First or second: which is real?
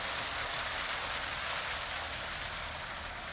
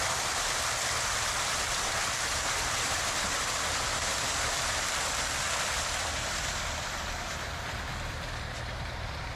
first